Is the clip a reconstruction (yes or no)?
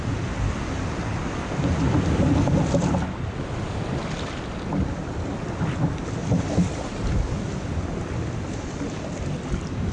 no